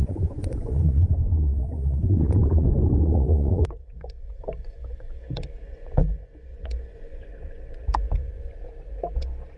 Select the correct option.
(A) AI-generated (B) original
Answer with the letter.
A